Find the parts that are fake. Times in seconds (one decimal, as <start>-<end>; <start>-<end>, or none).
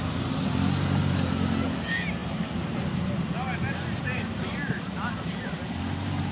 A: none